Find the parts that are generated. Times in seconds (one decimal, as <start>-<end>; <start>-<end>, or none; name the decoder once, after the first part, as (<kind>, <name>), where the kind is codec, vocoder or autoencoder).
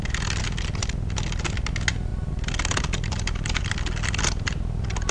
none